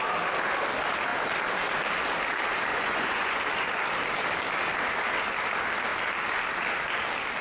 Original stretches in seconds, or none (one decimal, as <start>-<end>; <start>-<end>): 0.0-2.7; 3.4-7.4